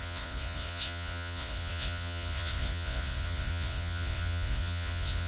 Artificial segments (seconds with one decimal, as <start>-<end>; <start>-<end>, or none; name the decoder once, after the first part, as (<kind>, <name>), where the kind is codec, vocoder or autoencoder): 0.0-5.3 (vocoder, Vocos)